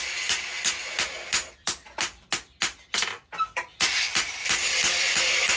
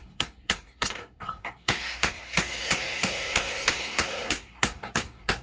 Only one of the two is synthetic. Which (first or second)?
second